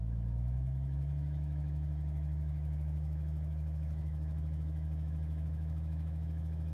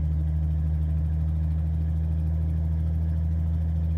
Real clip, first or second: second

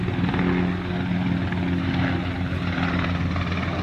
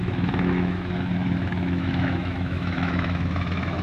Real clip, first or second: first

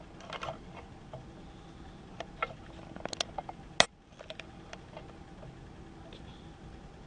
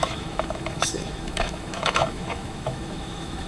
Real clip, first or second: first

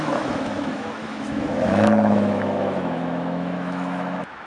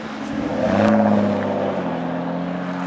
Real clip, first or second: second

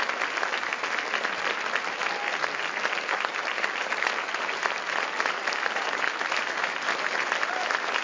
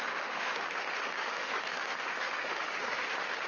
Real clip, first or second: first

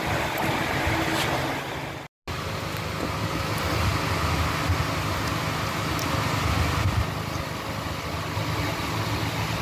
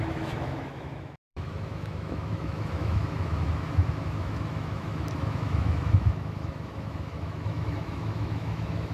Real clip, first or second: first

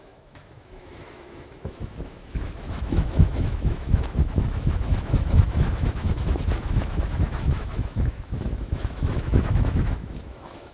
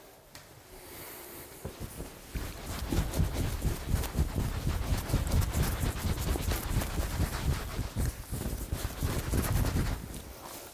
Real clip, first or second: second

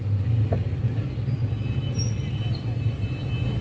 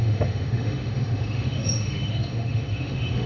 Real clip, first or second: first